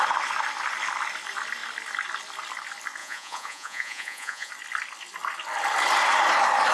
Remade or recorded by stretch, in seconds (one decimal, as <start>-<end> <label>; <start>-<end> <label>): 0.0-3.0 recorded; 3.0-4.5 remade; 4.5-6.7 recorded